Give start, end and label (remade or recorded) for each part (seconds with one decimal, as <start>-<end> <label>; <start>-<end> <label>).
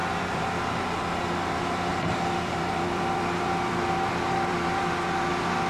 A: 0.0-0.6 remade; 0.6-1.9 recorded; 1.9-5.3 remade; 5.3-5.7 recorded